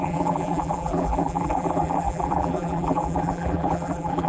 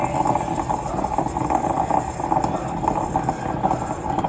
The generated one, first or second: first